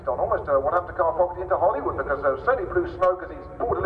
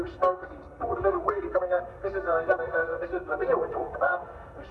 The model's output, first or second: second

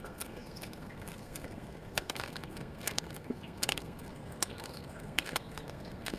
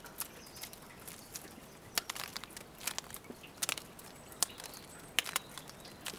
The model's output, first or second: first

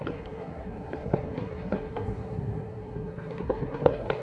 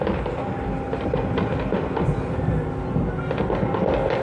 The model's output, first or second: first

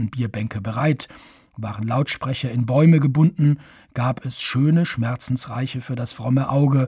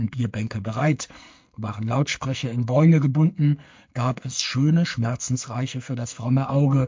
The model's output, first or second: second